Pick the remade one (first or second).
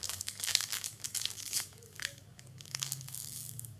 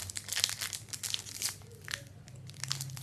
first